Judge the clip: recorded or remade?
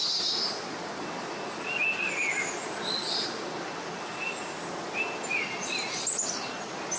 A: recorded